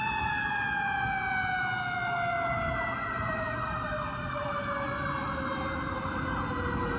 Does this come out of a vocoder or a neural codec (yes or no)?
no